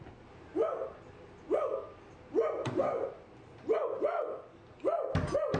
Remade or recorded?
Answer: recorded